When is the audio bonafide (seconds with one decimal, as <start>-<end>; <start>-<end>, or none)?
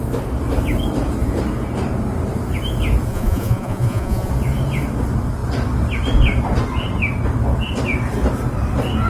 0.0-3.1; 4.3-9.1